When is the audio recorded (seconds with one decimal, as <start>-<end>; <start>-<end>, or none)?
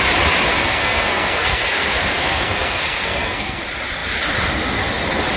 0.0-0.5; 3.6-5.4